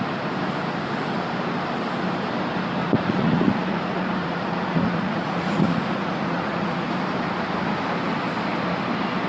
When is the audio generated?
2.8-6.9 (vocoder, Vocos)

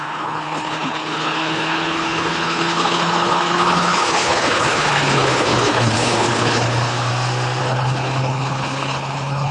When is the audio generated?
0.0-7.1 (codec, HILCodec); 7.6-9.5

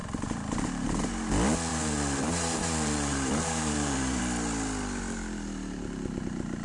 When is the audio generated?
0.0-1.1 (vocoder, BigVGAN v2); 1.7-4.2

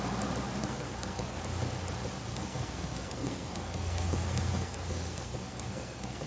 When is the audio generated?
0.6-1.4 (codec, SNAC); 2.3-6.3

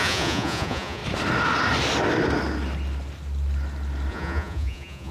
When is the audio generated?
0.0-1.0 (vocoder, Vocos); 4.1-5.1